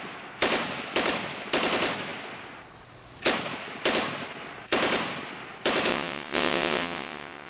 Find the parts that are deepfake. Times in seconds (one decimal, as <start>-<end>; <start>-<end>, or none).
5.9-7.5